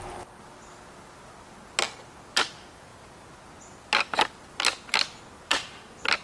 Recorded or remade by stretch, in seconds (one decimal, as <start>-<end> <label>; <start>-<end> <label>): 0.0-6.2 recorded